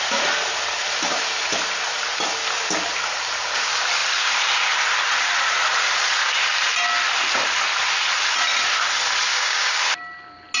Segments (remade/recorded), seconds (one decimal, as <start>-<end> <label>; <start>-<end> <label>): 0.0-9.3 recorded; 9.3-9.8 remade; 9.8-10.6 recorded